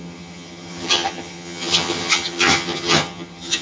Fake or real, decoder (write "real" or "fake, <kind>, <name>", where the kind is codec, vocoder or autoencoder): fake, vocoder, HiFi-GAN